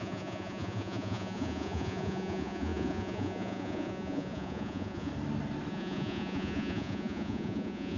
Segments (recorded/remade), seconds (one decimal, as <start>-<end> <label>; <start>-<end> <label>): 0.0-5.1 remade; 5.1-5.7 recorded; 5.7-8.0 remade